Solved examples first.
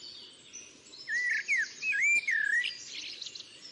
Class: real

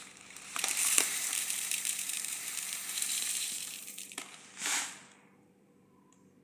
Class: fake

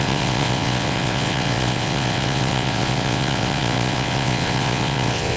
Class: fake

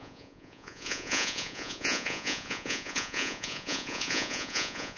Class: fake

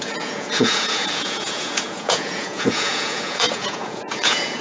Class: fake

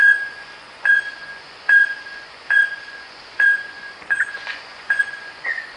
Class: fake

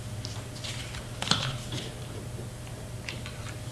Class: real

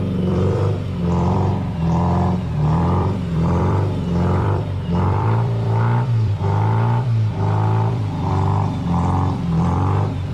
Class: fake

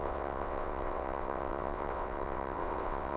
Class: fake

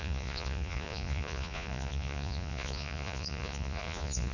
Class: fake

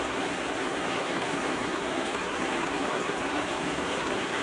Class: fake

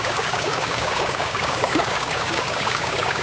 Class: fake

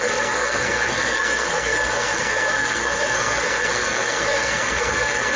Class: fake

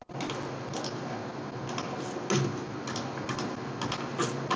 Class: real